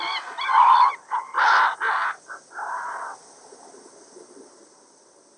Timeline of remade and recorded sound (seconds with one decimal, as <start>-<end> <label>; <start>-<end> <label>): 0.0-5.4 recorded